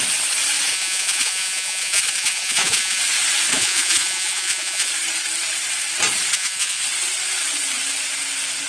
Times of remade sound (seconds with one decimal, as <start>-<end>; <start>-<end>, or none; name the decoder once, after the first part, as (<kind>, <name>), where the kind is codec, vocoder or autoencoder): 0.7-3.0 (vocoder, Vocos); 3.5-4.9; 6.3-6.8